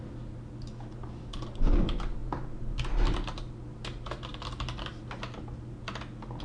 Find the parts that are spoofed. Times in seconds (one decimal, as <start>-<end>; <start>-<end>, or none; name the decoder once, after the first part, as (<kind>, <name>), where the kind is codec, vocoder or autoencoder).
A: none